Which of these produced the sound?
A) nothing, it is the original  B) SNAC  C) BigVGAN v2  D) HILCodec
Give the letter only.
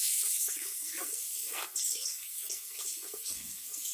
B